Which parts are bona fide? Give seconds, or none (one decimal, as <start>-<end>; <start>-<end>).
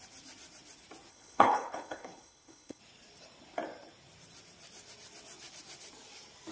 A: 0.0-1.1; 2.8-6.5